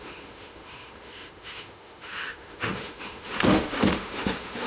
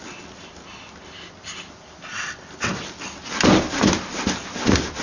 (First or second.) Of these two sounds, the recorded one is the second